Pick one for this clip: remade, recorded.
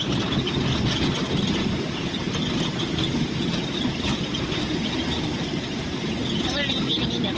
recorded